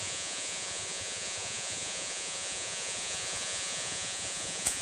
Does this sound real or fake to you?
fake